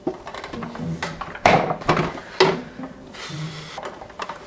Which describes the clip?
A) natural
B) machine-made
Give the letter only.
A